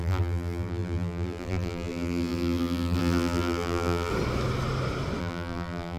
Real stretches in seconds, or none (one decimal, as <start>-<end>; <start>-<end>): 4.1-5.2